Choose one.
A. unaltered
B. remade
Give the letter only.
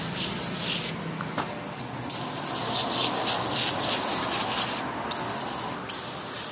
A